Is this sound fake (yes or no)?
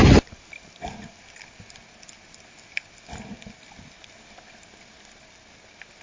no